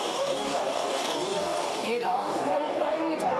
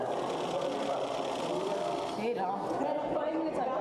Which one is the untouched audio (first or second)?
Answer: second